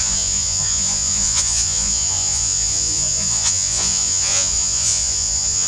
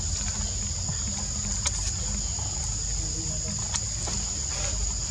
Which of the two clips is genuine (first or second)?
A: second